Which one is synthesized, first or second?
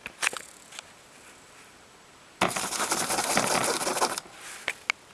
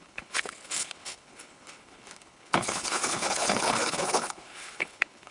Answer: second